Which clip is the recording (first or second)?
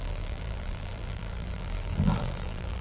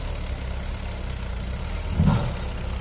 second